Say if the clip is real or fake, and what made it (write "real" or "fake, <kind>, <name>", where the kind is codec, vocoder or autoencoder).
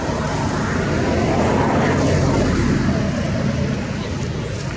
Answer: real